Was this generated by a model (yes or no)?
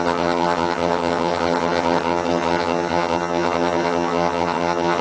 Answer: yes